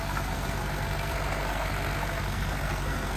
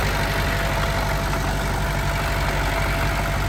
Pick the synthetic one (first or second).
first